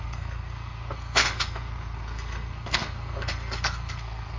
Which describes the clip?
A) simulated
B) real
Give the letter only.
A